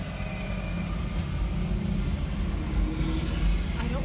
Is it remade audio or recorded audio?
recorded